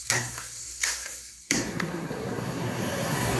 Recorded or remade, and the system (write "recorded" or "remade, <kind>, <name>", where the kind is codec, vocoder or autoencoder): remade, codec, SNAC